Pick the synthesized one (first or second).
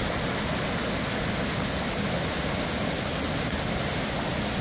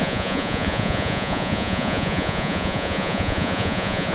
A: second